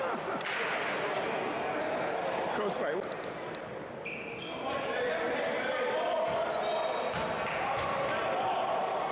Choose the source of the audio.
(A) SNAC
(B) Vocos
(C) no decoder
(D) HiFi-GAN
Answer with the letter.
C